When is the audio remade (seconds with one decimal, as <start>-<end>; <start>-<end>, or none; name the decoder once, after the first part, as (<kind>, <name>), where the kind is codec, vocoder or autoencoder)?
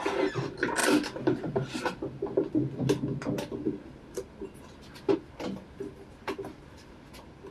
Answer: none